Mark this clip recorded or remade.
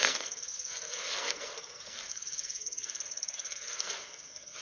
remade